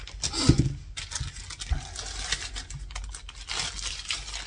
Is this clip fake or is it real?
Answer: real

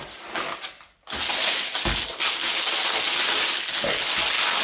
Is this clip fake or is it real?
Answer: real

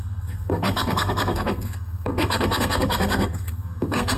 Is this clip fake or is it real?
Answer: fake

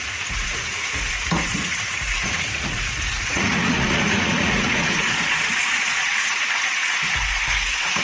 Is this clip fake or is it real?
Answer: fake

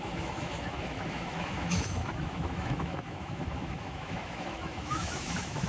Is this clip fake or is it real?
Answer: fake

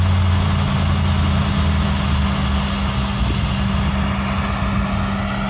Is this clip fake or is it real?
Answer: real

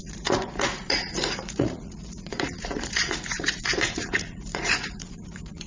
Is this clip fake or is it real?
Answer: fake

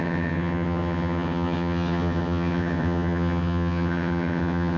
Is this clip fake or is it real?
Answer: fake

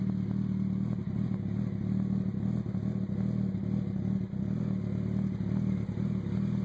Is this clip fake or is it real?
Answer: real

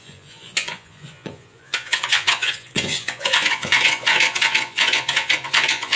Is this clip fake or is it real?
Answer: fake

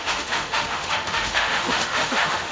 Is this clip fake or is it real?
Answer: fake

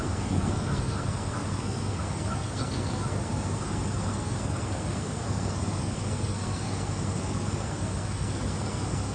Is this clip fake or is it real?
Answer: fake